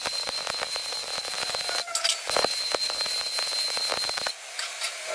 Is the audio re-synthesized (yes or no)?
no